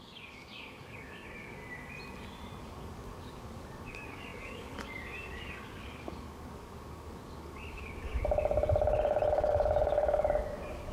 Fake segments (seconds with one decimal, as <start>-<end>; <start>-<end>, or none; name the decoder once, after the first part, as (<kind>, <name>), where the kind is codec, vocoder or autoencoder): 0.0-1.6 (codec, DAC); 2.6-8.2; 9.3-10.9